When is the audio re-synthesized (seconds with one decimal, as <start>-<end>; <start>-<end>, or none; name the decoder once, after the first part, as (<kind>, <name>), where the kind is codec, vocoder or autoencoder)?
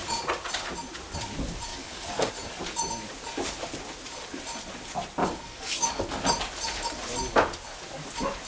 1.7-2.3 (codec, DAC); 5.2-6.0